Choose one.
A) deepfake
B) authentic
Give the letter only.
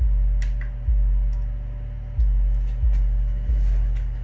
B